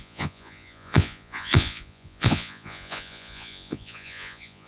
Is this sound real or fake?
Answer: fake